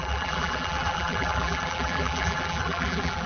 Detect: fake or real fake